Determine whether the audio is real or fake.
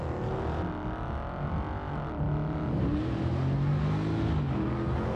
real